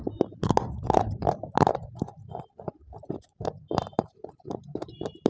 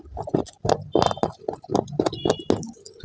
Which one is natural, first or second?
second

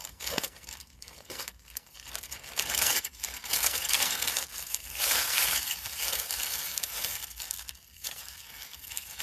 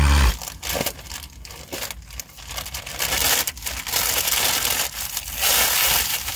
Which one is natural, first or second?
second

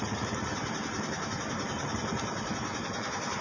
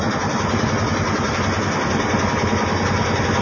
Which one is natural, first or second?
second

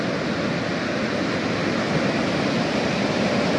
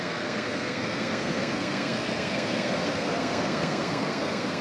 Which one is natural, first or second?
first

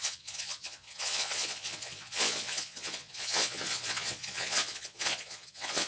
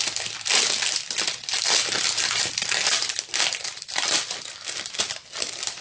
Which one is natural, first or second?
second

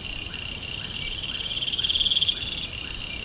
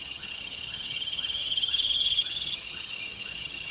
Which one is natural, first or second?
first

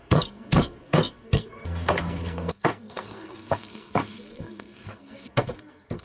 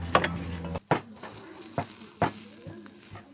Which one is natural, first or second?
second